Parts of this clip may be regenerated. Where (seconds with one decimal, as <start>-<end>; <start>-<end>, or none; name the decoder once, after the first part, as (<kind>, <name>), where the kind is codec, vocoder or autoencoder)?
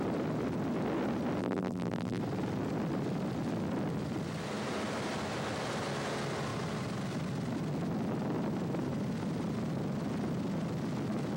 1.4-2.2 (vocoder, BigVGAN v2)